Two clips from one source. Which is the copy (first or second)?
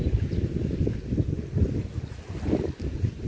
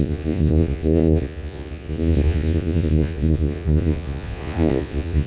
second